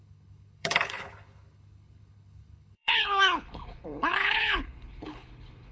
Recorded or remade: remade